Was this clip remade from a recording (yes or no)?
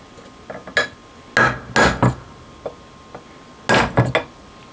no